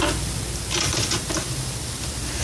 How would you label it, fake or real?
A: real